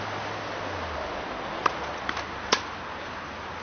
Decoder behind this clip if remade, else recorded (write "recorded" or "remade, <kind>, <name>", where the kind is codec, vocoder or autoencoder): recorded